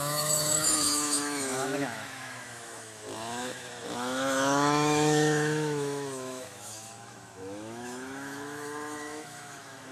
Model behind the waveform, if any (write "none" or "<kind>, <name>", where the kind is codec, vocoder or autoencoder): autoencoder, DAC-VAE